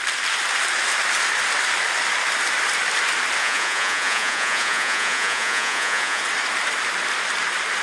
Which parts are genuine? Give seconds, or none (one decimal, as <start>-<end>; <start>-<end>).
0.0-3.4; 6.2-7.8